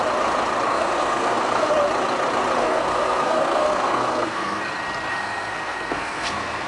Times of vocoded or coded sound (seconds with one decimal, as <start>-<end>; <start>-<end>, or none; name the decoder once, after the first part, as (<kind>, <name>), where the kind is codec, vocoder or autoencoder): 0.7-1.7 (codec, SNAC); 2.6-4.6; 5.1-6.7